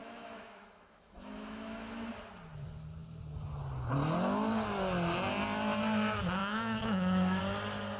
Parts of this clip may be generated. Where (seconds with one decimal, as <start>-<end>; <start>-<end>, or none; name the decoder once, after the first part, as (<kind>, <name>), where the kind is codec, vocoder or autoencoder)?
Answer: 0.0-2.1 (autoencoder, DAC-VAE); 6.4-7.4